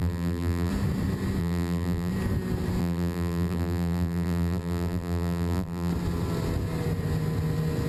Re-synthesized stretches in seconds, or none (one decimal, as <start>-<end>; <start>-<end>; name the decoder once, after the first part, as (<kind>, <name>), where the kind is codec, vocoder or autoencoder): 0.0-0.7 (vocoder, BigVGAN v2); 1.4-2.1; 2.8-5.9